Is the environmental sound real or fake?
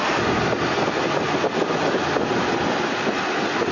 real